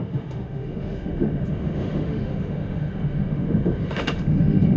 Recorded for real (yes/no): no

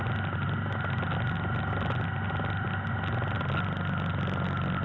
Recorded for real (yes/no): yes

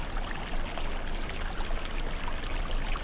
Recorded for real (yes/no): yes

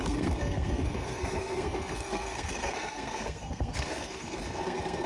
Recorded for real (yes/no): no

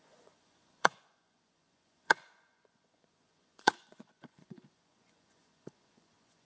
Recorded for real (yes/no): no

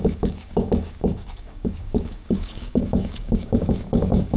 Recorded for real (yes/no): no